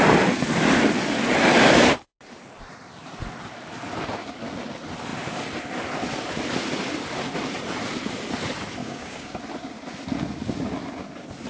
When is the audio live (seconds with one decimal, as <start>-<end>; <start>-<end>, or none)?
0.0-8.8; 9.4-11.5